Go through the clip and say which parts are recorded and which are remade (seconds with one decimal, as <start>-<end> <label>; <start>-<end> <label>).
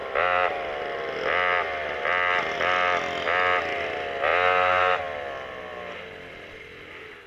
0.0-7.3 recorded